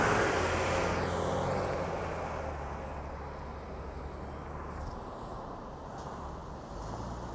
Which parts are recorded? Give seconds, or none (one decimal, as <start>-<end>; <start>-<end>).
0.0-7.3